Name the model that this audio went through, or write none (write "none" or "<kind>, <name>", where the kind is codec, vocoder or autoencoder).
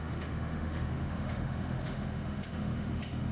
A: autoencoder, DAC-VAE